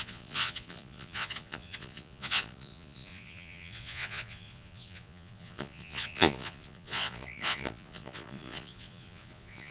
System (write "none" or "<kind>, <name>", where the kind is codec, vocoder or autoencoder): vocoder, Vocos